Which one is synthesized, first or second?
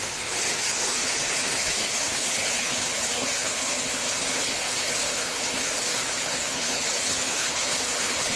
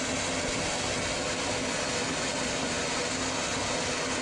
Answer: first